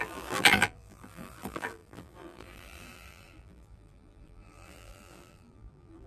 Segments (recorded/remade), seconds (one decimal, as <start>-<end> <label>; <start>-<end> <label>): 0.0-6.1 remade